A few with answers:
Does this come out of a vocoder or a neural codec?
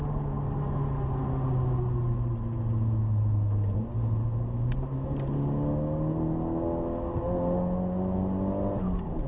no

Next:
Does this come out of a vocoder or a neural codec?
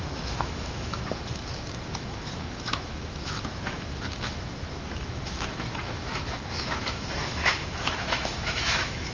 yes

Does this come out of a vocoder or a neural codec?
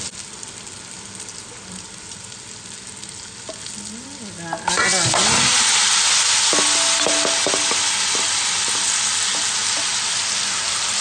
no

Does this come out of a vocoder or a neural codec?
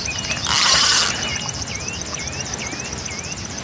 no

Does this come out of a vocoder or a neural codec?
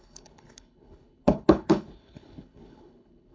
yes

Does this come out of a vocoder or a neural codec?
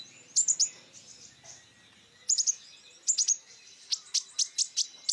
no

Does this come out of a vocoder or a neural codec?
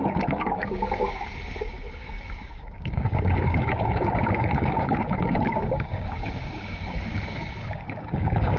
yes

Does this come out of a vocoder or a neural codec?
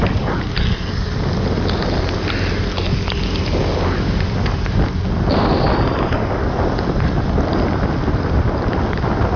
no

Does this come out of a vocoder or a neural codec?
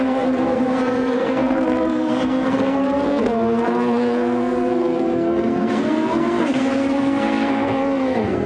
yes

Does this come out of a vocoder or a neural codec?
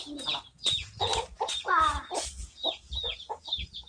yes